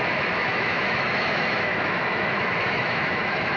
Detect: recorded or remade remade